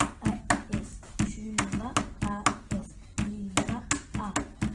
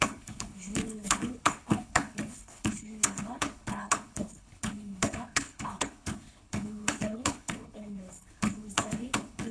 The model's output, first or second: second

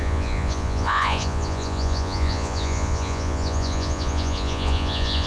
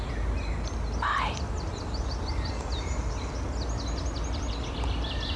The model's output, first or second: first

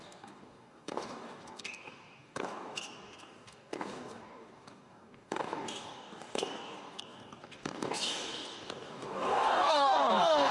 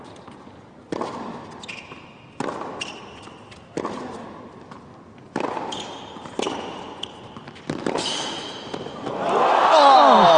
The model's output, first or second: first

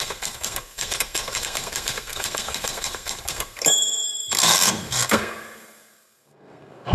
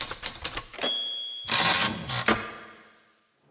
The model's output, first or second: first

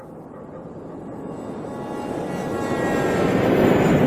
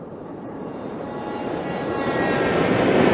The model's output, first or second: second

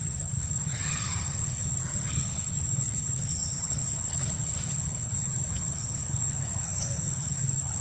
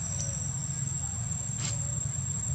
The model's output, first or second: first